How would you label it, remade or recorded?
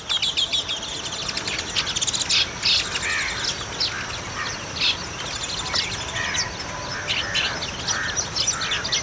recorded